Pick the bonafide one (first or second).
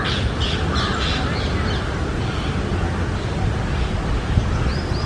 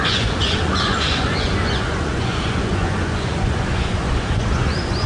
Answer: first